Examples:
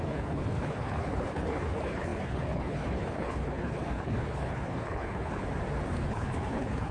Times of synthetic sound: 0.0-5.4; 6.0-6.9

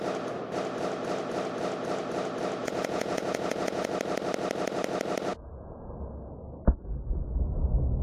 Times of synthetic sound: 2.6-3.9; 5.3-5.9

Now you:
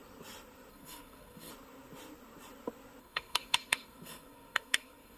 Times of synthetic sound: 0.7-1.5; 3.0-5.2

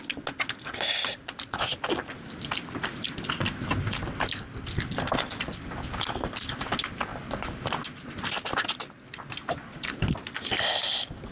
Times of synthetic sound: none